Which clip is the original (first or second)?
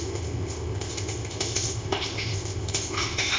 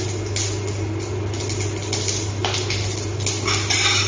second